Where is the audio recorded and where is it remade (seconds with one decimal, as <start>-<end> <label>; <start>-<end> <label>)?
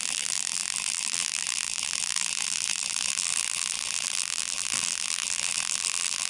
0.0-6.3 remade